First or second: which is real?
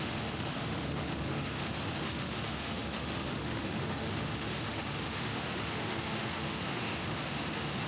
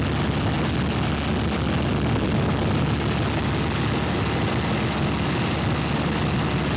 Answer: second